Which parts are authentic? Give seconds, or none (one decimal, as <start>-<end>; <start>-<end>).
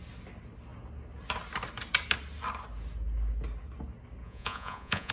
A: 0.0-4.2